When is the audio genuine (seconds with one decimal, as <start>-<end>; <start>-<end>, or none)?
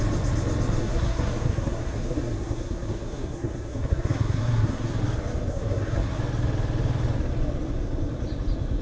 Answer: 0.0-0.8; 5.0-5.5; 6.2-8.8